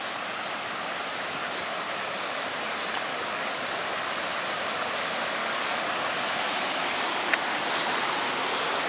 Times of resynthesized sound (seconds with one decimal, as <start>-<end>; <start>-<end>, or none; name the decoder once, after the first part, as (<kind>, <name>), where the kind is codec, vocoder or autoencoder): 3.1-3.6 (codec, DAC); 5.4-7.2